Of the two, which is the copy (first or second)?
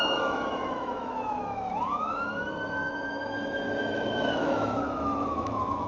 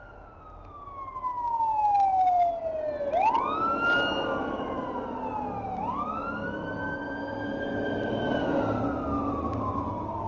first